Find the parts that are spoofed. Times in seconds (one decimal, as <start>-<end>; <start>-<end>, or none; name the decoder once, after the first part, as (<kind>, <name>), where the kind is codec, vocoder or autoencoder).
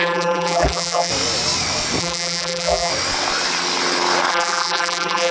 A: 0.0-1.1 (vocoder, BigVGAN v2); 2.0-2.9; 4.3-5.3